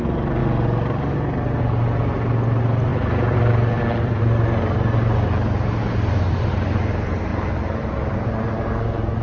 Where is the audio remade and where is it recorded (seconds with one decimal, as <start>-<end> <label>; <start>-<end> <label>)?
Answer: 0.0-2.9 recorded; 2.9-4.2 remade; 4.2-9.2 recorded